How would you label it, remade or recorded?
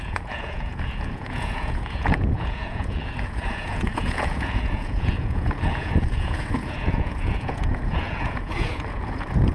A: remade